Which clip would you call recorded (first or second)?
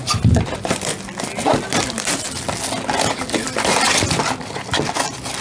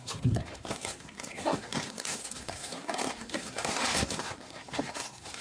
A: first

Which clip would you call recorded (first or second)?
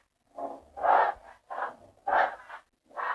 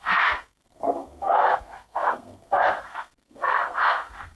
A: first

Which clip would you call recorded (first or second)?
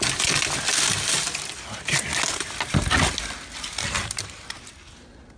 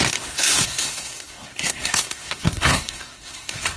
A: first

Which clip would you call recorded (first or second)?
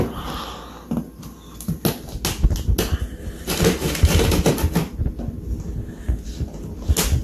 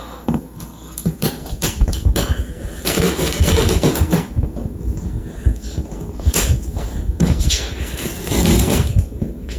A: first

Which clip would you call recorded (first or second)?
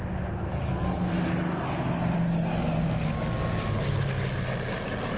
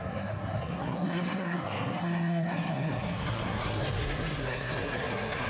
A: first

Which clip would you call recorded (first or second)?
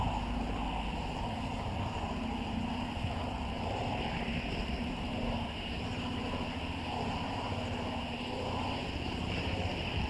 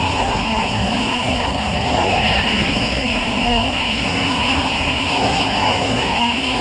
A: first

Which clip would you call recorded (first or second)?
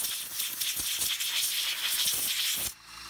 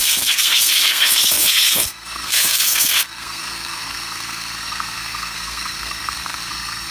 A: first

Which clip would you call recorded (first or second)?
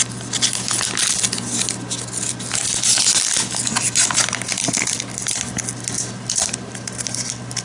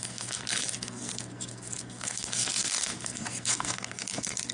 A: first